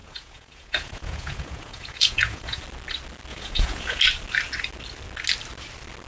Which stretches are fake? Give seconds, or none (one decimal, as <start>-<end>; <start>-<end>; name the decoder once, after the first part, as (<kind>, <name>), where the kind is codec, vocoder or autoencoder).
0.0-2.6 (vocoder, Vocos); 3.3-4.0